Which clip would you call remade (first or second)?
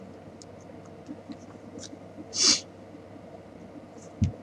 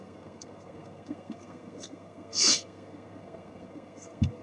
second